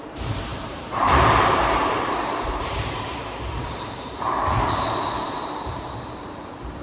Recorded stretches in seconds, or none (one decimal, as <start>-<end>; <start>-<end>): none